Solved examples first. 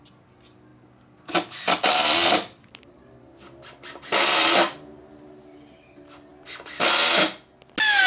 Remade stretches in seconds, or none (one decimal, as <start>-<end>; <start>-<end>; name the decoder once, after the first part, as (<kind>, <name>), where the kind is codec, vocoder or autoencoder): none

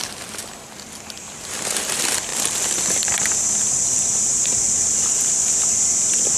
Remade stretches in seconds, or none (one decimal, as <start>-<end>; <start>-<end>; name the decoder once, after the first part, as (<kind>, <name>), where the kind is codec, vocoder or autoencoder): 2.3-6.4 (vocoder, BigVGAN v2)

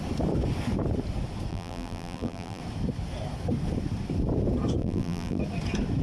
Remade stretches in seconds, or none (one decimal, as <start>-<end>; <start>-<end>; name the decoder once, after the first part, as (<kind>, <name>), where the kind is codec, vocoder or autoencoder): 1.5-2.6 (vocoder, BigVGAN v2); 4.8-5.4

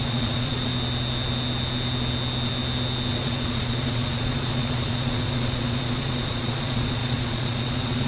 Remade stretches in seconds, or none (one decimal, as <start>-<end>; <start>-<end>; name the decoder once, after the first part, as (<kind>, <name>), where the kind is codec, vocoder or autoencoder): 0.0-0.7 (vocoder, Vocos); 3.1-8.1

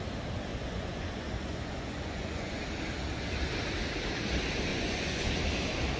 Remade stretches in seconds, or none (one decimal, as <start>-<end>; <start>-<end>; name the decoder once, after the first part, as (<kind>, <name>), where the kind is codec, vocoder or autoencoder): 0.5-2.6 (vocoder, Vocos); 4.7-5.3

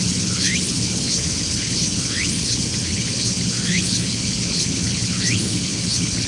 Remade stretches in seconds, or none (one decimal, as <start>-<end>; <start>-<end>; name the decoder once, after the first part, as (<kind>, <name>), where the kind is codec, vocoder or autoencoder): 0.0-6.3 (codec, HILCodec)